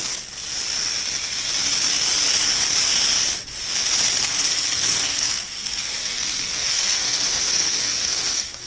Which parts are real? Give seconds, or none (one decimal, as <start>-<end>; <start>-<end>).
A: 0.0-4.2